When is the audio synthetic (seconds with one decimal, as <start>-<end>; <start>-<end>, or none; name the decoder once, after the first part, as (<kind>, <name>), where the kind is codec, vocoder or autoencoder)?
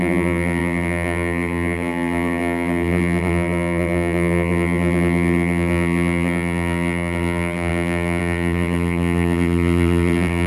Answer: 0.0-10.5 (vocoder, BigVGAN v2)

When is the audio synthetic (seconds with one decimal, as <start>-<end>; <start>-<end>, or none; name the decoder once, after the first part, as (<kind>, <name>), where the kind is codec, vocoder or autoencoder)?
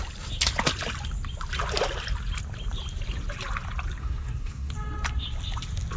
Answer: 4.0-4.7 (codec, SNAC)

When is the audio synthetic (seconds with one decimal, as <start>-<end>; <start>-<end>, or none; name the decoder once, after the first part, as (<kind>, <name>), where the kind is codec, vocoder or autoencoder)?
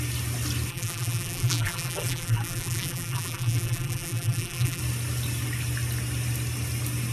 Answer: 0.7-4.8 (vocoder, BigVGAN v2)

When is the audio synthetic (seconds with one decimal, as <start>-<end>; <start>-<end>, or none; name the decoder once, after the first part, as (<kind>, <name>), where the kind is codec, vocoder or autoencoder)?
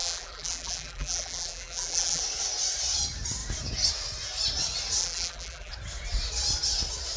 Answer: 0.0-2.2 (vocoder, BigVGAN v2); 5.0-5.7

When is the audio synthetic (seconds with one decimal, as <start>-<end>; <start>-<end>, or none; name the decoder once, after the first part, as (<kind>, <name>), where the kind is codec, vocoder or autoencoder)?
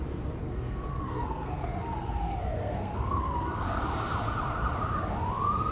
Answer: 0.4-3.8 (codec, SNAC)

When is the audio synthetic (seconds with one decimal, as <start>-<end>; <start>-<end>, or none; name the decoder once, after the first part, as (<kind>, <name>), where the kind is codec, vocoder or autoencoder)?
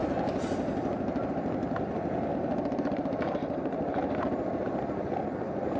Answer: 1.3-2.3 (vocoder, BigVGAN v2); 3.3-4.0; 4.6-5.8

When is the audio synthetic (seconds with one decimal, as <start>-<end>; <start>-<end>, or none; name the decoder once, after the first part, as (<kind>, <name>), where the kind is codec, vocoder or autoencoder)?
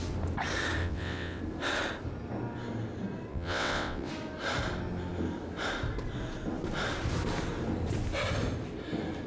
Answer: 0.8-1.4 (vocoder, WaveNeXt); 3.3-4.1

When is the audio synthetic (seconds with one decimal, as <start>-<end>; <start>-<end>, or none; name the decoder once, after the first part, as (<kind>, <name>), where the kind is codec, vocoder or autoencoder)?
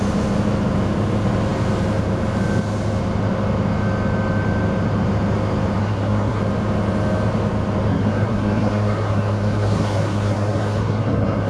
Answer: 5.8-6.4 (codec, SNAC); 7.9-11.5